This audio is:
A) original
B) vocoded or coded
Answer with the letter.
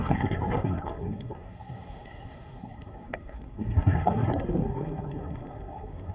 B